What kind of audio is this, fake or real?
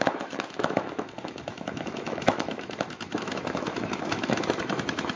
fake